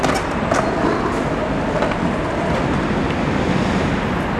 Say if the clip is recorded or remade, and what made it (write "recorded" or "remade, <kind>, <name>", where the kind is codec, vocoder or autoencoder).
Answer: recorded